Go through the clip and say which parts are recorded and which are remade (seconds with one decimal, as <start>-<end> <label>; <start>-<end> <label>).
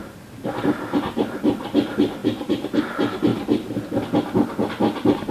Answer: 0.0-5.3 recorded